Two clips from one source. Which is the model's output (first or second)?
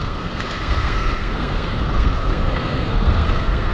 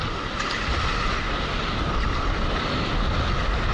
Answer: first